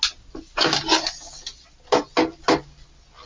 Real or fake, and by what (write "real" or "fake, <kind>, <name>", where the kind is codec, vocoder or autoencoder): real